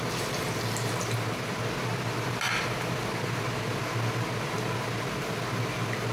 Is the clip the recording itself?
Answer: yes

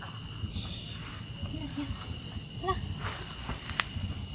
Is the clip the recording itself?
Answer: yes